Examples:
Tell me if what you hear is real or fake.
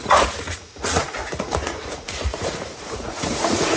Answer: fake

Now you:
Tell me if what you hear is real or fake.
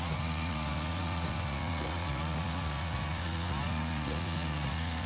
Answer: fake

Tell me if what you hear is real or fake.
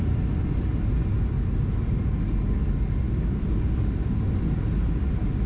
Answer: real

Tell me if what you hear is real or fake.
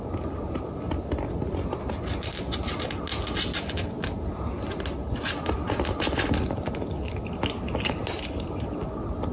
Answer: real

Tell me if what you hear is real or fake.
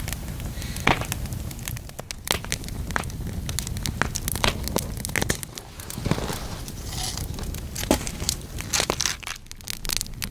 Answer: real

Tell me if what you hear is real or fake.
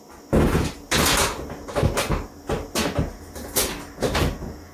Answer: real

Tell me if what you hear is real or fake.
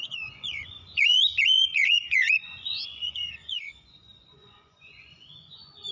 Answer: fake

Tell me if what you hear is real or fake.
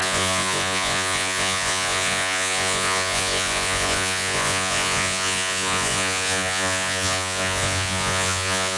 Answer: fake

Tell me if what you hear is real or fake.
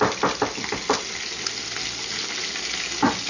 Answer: real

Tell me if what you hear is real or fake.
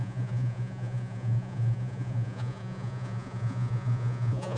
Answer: fake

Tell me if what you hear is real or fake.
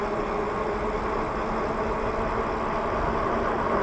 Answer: real